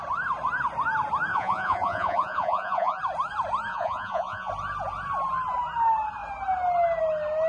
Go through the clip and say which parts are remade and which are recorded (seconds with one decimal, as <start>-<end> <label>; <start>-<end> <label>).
0.0-1.3 recorded; 1.3-3.0 remade; 3.0-3.7 recorded; 3.7-4.5 remade; 4.5-7.5 recorded